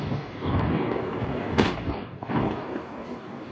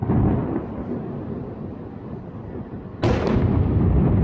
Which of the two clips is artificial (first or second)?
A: first